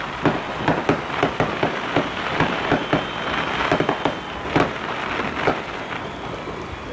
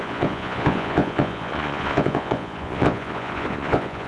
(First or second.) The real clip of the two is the first